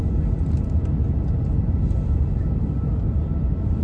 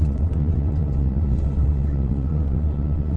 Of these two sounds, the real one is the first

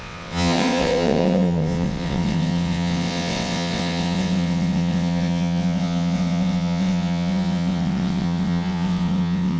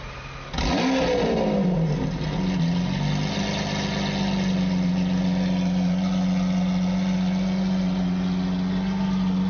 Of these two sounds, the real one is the second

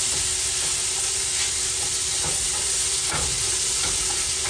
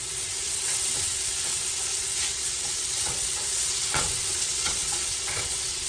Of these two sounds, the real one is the first